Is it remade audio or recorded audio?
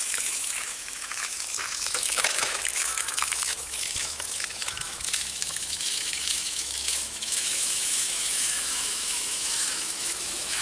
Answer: remade